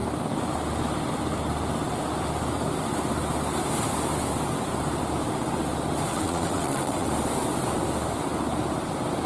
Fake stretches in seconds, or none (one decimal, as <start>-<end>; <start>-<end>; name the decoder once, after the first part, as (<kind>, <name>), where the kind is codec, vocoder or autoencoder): 6.1-7.1 (vocoder, WaveNeXt)